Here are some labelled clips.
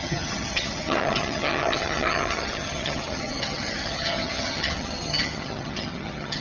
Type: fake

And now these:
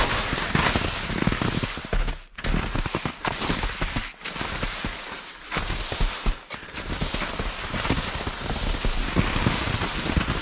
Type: real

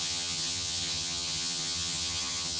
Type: fake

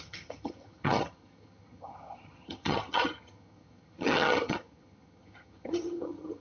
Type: fake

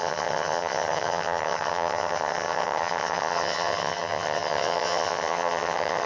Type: fake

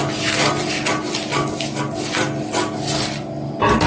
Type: real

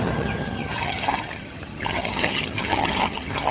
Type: fake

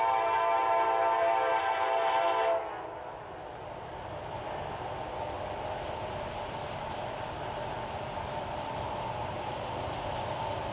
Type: real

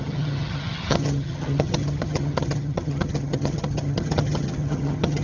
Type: fake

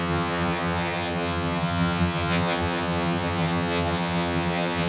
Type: fake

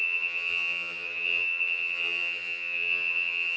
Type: fake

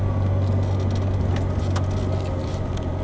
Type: real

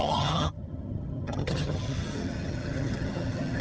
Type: fake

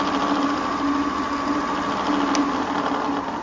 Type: real